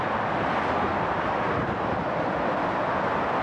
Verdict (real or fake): real